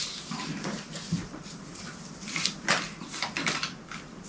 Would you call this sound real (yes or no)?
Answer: yes